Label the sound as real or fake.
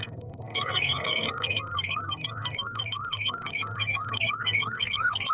fake